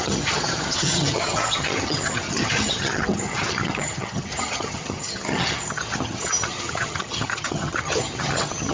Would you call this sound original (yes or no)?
no